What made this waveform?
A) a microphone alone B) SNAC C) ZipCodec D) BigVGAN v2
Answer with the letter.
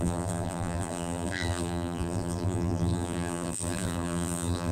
D